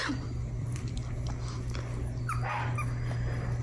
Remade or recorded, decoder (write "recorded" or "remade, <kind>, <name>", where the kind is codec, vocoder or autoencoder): recorded